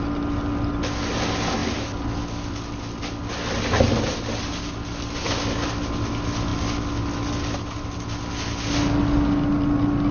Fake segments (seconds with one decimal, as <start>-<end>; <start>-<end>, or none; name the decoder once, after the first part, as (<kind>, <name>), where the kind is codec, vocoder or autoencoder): none